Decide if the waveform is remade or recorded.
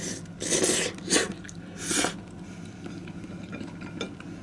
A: recorded